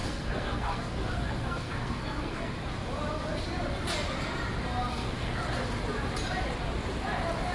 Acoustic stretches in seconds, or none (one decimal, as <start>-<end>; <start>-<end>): 2.5-4.9; 5.4-7.5